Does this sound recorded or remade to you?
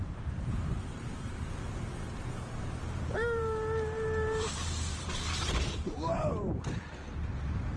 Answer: remade